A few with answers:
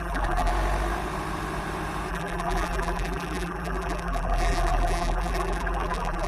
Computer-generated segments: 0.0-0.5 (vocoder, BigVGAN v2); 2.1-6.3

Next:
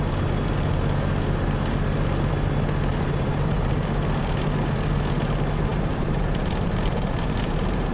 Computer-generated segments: 2.9-3.7 (vocoder, BigVGAN v2); 5.7-7.9

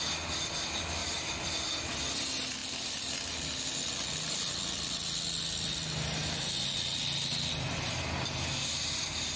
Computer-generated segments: 1.0-1.7 (vocoder, BigVGAN v2); 2.6-3.1

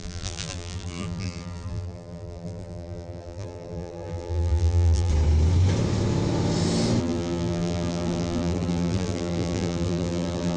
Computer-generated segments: 0.0-5.1 (vocoder, BigVGAN v2); 7.0-10.6

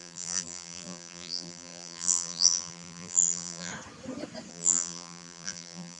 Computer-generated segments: 0.0-3.7 (vocoder, BigVGAN v2); 4.5-6.0

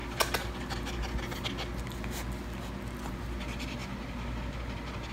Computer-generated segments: none

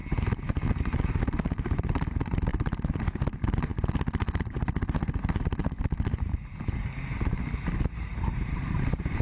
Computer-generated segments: 0.8-3.7 (vocoder, BigVGAN v2); 4.4-5.6; 8.1-9.2